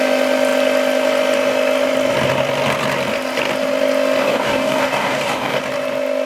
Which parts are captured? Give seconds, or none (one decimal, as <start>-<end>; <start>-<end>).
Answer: 0.0-4.2; 5.6-6.3